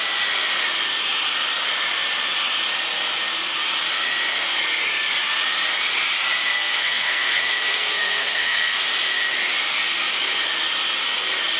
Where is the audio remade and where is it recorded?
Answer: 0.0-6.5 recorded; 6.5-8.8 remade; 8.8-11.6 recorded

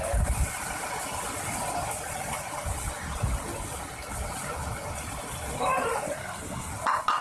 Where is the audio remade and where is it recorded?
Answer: 0.0-6.2 recorded; 6.2-6.7 remade; 6.7-7.2 recorded

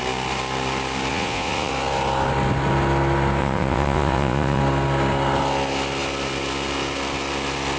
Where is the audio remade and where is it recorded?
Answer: 0.0-1.1 recorded; 1.1-1.7 remade; 1.7-3.4 recorded; 3.4-4.6 remade; 4.6-7.8 recorded

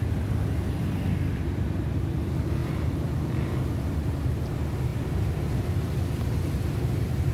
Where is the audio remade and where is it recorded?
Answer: 0.0-2.6 recorded; 2.6-3.3 remade; 3.3-4.9 recorded; 4.9-5.5 remade; 5.5-7.3 recorded

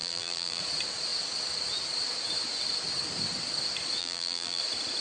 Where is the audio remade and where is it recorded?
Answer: 0.0-0.6 remade; 0.6-4.0 recorded; 4.0-4.6 remade; 4.6-5.0 recorded